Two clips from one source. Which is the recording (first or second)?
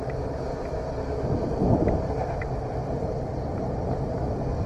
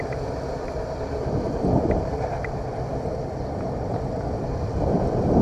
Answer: first